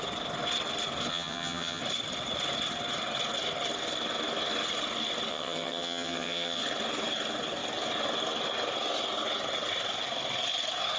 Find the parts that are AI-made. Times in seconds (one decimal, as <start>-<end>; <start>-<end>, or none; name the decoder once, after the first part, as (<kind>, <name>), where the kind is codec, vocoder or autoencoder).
1.1-1.8 (vocoder, HiFi-GAN); 5.3-6.6